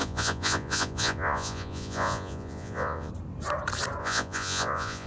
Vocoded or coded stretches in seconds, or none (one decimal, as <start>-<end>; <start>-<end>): 0.0-3.1; 4.0-5.1